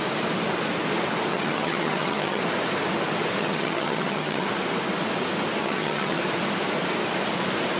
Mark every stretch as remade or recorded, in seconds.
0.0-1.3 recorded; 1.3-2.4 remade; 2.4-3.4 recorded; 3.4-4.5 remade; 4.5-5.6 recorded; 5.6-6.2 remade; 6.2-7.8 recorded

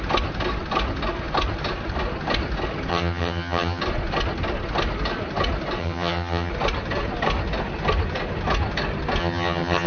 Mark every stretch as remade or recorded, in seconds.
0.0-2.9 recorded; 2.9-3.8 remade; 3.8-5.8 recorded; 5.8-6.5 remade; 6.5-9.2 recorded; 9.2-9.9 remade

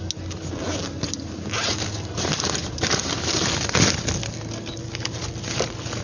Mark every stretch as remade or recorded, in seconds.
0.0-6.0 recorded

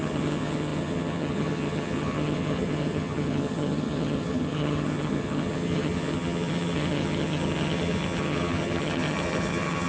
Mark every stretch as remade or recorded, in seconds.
0.0-9.9 remade